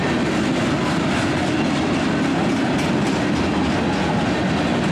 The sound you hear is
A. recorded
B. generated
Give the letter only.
A